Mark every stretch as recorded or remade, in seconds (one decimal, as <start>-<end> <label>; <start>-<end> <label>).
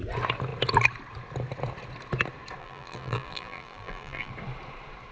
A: 0.0-2.6 recorded; 2.6-4.3 remade; 4.3-5.1 recorded